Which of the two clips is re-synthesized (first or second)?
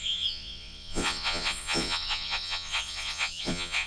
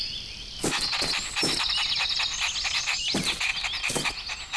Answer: first